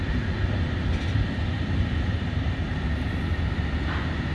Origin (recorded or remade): recorded